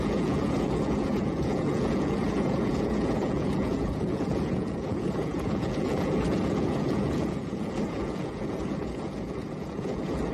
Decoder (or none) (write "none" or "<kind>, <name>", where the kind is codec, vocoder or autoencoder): vocoder, Vocos